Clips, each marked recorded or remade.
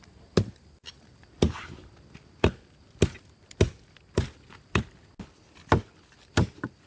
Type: recorded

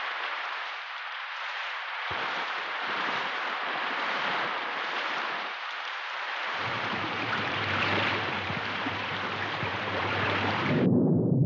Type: remade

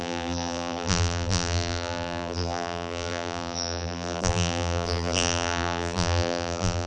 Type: remade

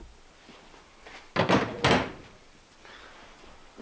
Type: recorded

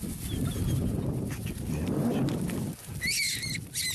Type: recorded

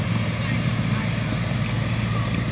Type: recorded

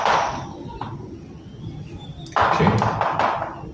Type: recorded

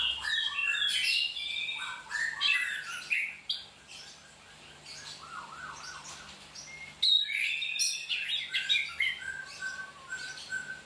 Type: recorded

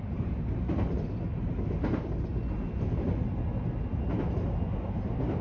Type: recorded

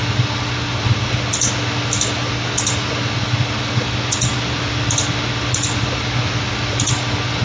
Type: recorded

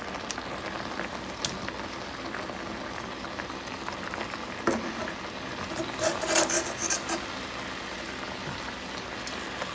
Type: recorded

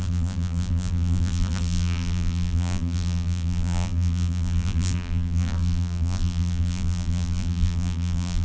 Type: remade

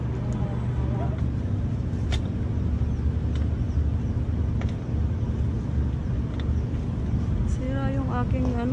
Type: recorded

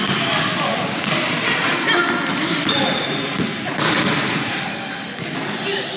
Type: recorded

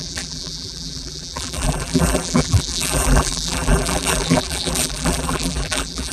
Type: remade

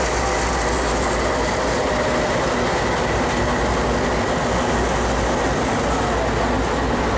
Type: recorded